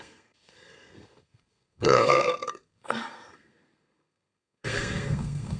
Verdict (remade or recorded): remade